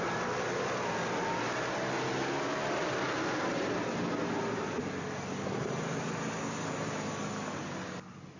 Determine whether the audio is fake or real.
real